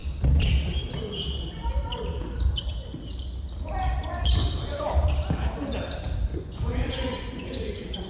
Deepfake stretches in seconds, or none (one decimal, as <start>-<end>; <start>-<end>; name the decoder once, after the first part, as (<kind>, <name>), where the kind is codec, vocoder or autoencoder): 6.3-8.1 (vocoder, Vocos)